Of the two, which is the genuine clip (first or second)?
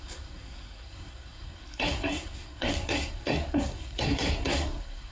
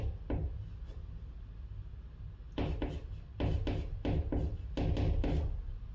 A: second